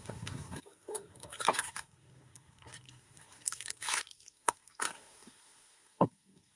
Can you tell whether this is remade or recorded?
remade